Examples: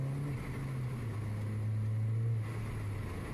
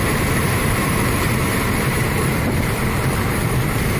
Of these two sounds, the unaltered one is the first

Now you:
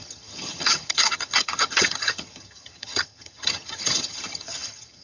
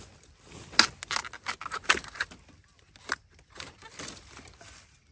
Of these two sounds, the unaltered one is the second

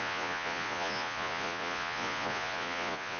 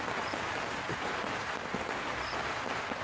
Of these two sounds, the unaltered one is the second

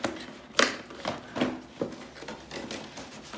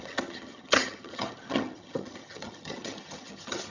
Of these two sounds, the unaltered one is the first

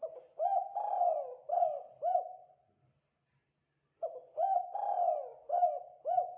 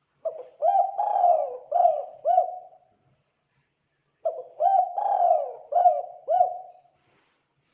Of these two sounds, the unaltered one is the first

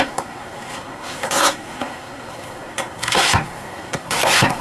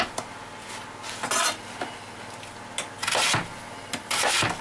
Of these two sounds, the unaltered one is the second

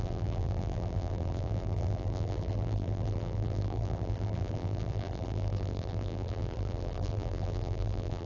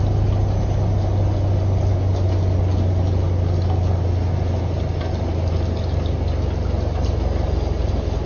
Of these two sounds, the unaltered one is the second